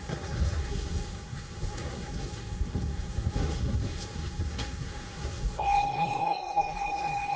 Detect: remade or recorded remade